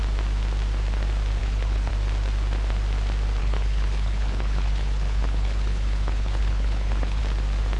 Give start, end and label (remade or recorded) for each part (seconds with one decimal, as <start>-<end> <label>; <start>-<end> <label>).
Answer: 0.0-1.4 recorded; 1.4-1.9 remade; 1.9-3.4 recorded; 3.4-7.2 remade; 7.2-7.8 recorded